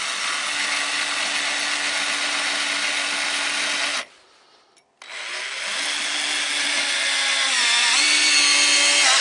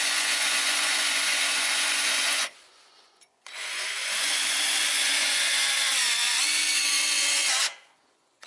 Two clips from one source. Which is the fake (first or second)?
second